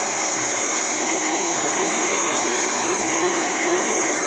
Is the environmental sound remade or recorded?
remade